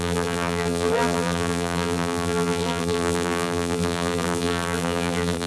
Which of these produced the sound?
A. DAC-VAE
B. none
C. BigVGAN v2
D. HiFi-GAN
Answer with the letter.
C